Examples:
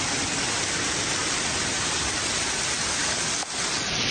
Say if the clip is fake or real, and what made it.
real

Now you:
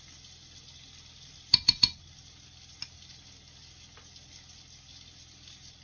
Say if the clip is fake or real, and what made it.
real